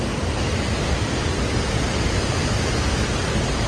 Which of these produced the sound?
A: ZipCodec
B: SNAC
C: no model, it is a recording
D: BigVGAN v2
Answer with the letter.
C